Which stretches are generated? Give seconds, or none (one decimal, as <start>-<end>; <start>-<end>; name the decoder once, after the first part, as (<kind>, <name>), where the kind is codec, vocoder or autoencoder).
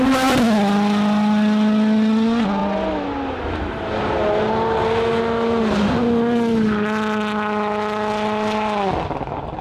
none